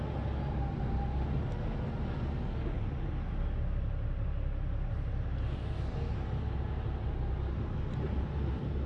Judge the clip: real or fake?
real